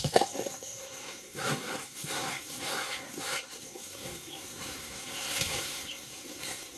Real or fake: fake